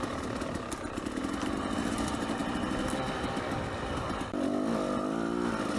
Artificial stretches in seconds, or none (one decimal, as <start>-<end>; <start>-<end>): none